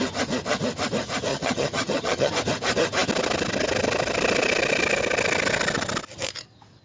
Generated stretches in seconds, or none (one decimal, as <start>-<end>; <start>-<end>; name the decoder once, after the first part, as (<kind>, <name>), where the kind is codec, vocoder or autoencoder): 1.3-2.3 (vocoder, HiFi-GAN)